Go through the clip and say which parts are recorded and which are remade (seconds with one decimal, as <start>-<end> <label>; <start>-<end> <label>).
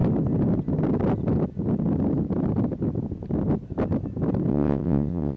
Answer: 0.0-4.5 recorded; 4.5-5.4 remade